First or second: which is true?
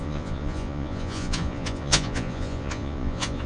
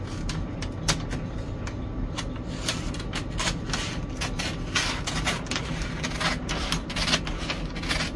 second